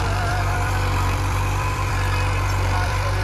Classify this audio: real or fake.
fake